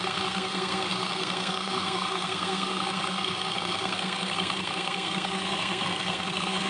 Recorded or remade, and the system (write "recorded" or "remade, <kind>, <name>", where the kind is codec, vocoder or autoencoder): remade, codec, SNAC